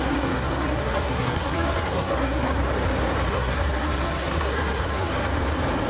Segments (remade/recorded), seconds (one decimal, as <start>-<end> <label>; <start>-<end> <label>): 0.0-2.6 remade; 2.6-3.3 recorded; 3.3-5.1 remade; 5.1-5.9 recorded